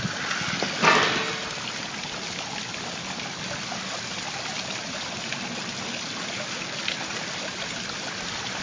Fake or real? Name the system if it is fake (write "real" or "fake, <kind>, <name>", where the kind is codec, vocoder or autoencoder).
real